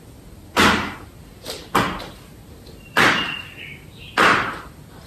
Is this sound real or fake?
real